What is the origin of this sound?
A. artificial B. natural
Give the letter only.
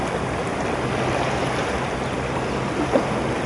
B